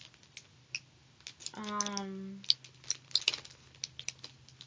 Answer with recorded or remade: recorded